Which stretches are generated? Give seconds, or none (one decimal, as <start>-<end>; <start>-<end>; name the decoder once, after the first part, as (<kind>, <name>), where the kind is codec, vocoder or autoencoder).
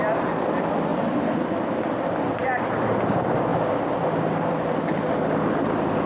0.9-1.5 (vocoder, BigVGAN v2); 3.5-5.2